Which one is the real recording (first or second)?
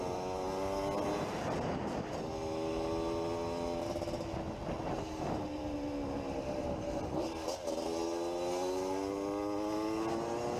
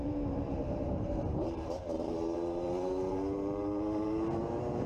first